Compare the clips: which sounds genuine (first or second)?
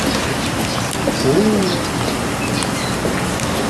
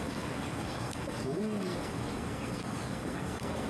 first